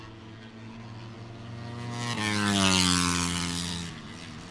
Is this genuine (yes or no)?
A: yes